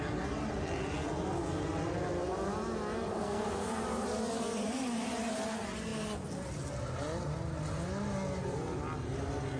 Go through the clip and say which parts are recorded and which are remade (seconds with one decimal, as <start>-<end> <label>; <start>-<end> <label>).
0.0-3.1 recorded; 3.1-3.8 remade; 3.8-9.6 recorded